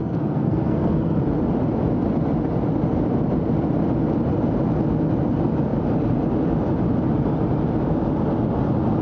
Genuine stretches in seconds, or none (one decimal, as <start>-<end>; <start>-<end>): 1.2-9.0